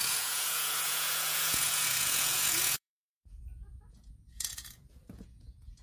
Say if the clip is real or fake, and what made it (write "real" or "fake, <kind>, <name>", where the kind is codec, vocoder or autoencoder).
fake, vocoder, Vocos